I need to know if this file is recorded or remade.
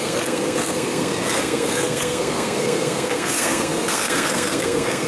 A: remade